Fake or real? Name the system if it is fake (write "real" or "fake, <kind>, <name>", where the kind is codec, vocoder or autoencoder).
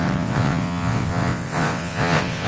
fake, vocoder, WaveNeXt